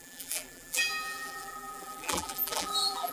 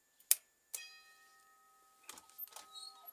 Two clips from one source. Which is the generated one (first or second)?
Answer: first